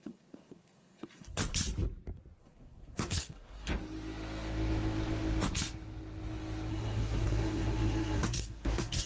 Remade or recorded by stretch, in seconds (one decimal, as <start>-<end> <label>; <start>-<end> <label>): 0.0-1.4 remade; 1.4-2.4 recorded; 2.4-3.7 remade; 3.7-6.7 recorded; 6.7-9.1 remade